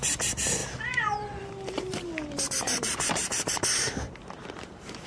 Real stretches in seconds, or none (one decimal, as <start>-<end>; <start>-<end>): none